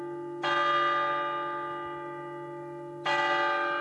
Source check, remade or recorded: recorded